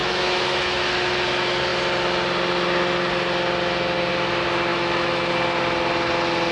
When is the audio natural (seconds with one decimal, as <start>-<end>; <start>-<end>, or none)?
0.8-4.7; 5.3-6.5